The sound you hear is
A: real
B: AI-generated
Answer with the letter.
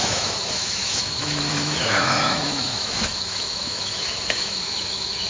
B